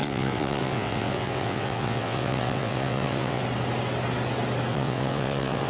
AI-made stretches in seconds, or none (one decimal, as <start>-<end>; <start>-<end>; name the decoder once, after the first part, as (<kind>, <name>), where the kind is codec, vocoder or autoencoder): 0.0-3.4 (vocoder, WaveNeXt); 4.7-5.7